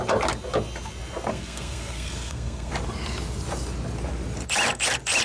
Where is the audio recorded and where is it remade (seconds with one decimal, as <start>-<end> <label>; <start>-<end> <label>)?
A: 0.0-1.3 recorded; 1.3-2.7 remade; 2.7-5.2 recorded